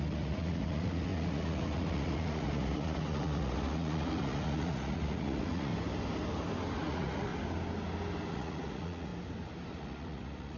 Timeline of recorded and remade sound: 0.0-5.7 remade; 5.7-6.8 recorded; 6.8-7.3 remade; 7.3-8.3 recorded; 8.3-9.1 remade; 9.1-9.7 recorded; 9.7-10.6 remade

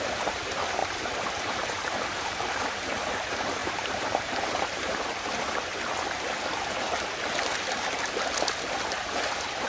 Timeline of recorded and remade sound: 0.0-5.7 remade; 5.7-9.0 recorded; 9.0-9.7 remade

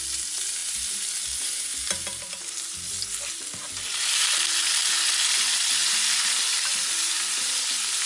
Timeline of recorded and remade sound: 0.0-8.1 recorded

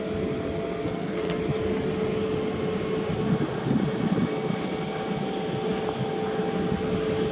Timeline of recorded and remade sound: 0.0-0.8 recorded; 0.8-1.4 remade; 1.4-7.3 recorded